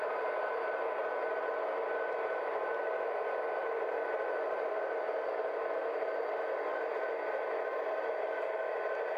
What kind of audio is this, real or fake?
real